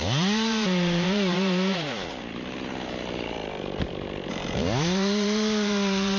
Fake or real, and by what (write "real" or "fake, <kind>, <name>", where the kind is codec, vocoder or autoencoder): fake, vocoder, BigVGAN v2